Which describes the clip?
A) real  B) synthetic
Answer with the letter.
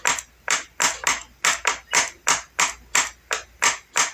A